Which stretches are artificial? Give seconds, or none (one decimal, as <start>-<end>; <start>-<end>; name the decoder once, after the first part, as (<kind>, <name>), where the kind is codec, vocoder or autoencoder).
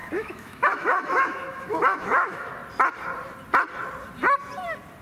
0.0-2.5 (autoencoder, DAC-VAE)